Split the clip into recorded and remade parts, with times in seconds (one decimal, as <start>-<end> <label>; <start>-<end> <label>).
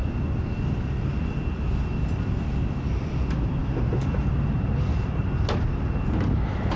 0.0-6.8 recorded